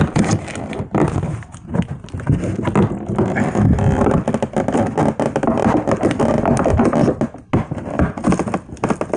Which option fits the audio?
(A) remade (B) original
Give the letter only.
B